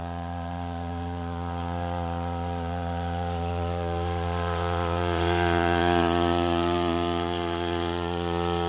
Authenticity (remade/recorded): remade